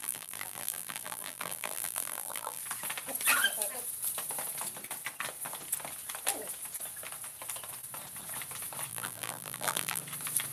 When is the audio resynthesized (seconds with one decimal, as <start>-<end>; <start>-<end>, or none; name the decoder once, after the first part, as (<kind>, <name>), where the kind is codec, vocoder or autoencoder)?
0.0-2.6 (vocoder, BigVGAN v2); 8.9-10.0